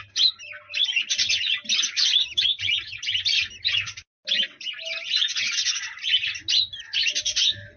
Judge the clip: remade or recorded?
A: recorded